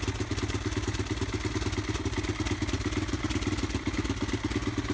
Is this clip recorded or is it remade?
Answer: recorded